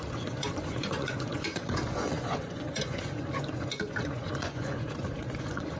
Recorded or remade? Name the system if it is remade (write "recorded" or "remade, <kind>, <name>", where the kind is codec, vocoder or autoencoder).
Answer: remade, vocoder, Vocos